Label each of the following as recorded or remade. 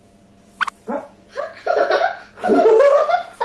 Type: remade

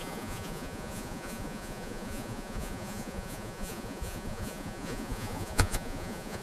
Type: remade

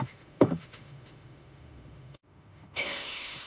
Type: remade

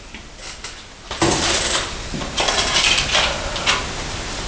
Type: recorded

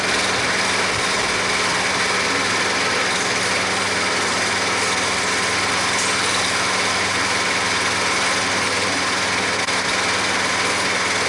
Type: recorded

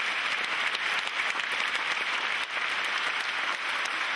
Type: recorded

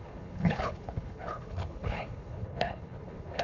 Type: remade